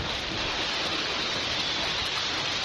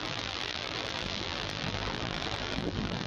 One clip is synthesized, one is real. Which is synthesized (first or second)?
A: second